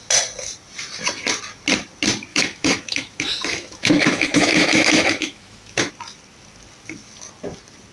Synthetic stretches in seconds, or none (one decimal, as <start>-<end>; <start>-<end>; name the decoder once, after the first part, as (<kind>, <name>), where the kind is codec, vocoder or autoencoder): 2.3-5.9 (autoencoder, DAC-VAE)